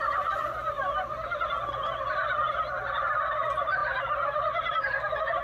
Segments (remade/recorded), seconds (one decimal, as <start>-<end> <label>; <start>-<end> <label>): 0.0-5.4 recorded